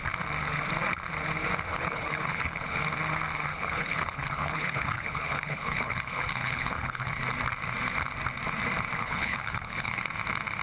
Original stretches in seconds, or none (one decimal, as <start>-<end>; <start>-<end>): 0.0-1.7; 2.8-3.5; 7.2-9.0; 10.0-10.6

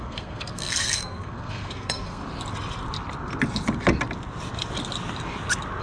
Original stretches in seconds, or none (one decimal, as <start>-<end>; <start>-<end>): 2.2-5.8